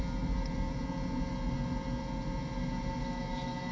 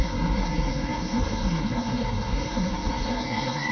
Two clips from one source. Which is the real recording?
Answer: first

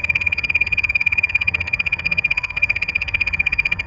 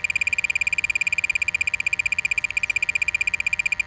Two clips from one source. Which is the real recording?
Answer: second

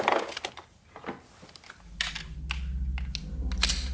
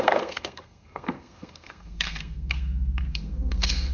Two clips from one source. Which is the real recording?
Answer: first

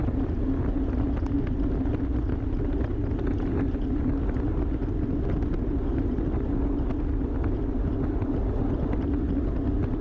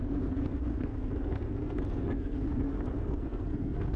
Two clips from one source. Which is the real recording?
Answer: first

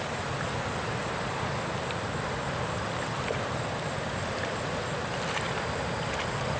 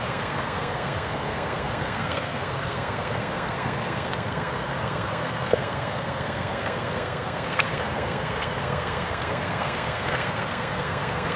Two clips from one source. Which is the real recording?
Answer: first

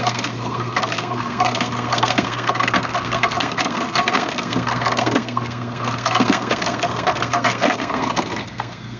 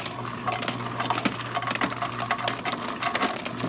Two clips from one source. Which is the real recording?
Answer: second